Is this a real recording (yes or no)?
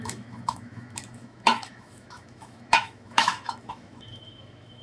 no